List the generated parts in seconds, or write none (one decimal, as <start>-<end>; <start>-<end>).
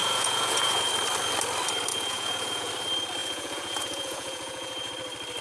0.0-0.9; 1.9-2.7; 3.2-4.9